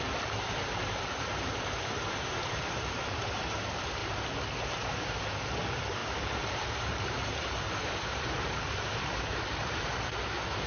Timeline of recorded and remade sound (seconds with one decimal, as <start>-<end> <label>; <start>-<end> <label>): 0.0-4.0 remade; 4.0-4.7 recorded; 4.7-10.7 remade